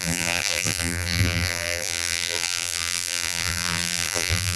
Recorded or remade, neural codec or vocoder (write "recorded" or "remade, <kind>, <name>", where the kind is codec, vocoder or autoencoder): remade, vocoder, BigVGAN v2